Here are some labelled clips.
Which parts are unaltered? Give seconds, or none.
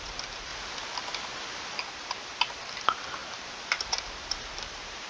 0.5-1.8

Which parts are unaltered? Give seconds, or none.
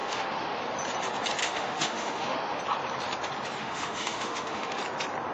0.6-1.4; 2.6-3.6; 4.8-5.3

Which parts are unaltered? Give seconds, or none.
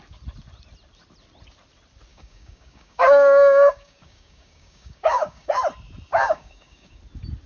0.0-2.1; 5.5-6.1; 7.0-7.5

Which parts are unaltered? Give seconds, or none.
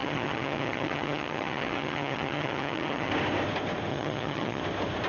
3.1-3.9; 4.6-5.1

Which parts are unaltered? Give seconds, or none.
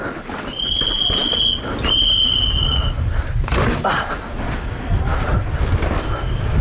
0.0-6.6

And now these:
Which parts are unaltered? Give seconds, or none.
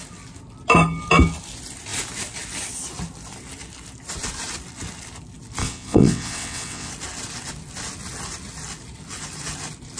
0.0-5.6; 6.9-10.0